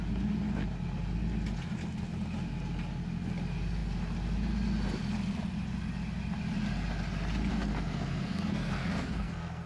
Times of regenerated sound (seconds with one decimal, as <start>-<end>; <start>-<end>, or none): 7.5-9.7